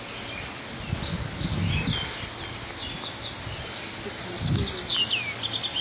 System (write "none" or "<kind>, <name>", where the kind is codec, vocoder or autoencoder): none